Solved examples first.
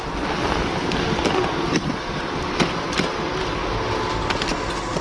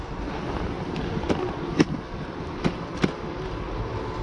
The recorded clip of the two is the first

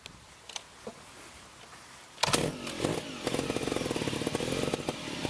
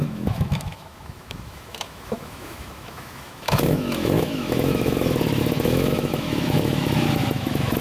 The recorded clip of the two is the first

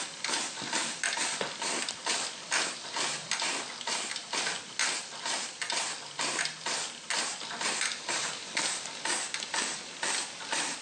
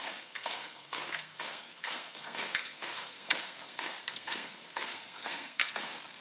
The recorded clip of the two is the first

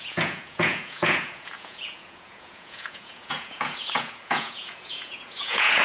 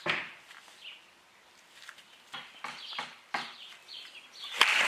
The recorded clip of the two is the second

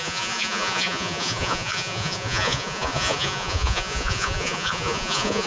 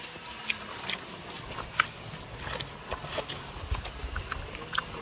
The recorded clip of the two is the second